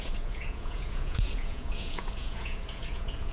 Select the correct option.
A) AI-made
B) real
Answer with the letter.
A